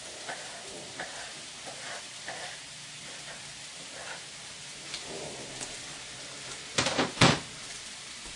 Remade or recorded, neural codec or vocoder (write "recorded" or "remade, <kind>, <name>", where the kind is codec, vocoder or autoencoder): remade, vocoder, BigVGAN v2